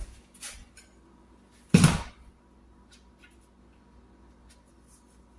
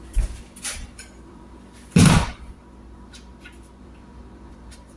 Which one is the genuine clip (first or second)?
first